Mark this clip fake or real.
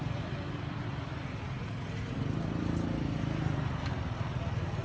real